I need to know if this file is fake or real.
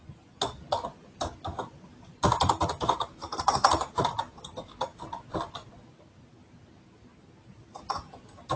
real